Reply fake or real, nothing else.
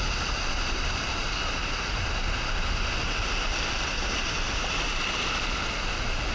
real